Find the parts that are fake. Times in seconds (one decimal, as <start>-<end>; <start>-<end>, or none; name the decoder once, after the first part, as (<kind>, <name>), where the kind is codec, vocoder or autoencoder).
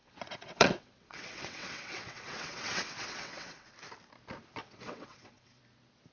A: 0.0-3.7 (vocoder, WaveNeXt); 4.6-5.6